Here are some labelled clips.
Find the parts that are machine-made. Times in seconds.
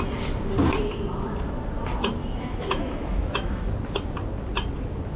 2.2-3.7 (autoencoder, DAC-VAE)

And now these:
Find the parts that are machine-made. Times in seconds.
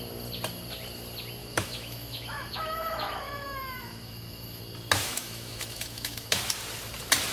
1.4-4.6 (autoencoder, DAC-VAE); 5.0-6.4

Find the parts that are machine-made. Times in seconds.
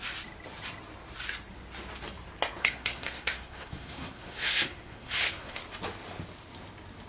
2.6-5.6 (codec, SNAC)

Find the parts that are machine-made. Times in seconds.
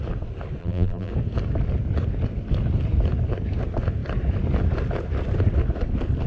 0.6-1.1 (vocoder, BigVGAN v2)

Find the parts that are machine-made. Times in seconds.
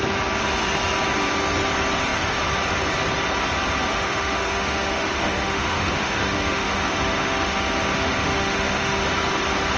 3.9-9.0 (autoencoder, DAC-VAE)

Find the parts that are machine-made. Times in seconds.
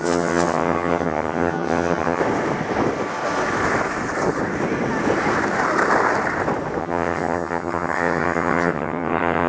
0.0-2.2 (vocoder, HiFi-GAN); 6.8-9.5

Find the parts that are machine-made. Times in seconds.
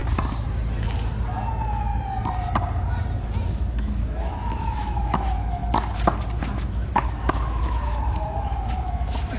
1.5-1.9 (autoencoder, DAC-VAE); 3.5-5.6; 6.7-9.4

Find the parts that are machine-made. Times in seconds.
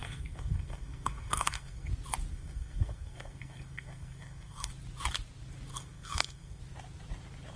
0.0-1.9 (codec, SNAC); 2.3-4.7; 5.7-6.6